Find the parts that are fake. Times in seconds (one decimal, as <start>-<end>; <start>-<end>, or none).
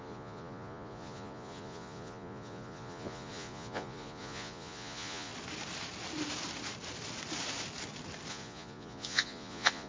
0.0-5.3; 8.3-9.9